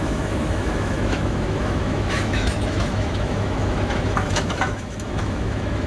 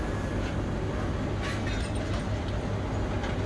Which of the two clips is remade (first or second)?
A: first